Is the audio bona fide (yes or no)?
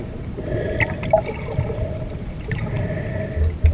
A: no